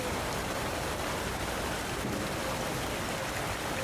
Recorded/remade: recorded